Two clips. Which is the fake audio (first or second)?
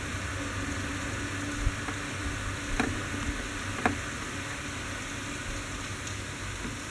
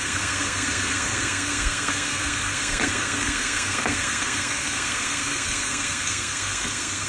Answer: second